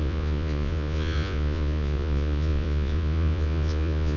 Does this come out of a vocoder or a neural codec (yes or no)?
yes